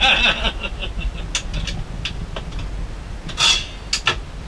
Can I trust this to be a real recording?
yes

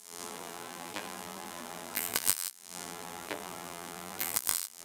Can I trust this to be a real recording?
no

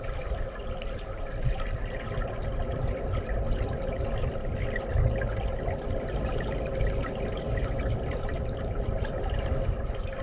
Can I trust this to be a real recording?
yes